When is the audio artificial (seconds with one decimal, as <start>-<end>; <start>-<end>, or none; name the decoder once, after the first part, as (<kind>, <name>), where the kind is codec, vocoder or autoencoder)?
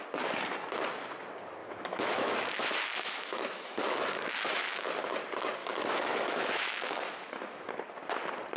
1.6-4.9 (autoencoder, DAC-VAE); 5.6-7.7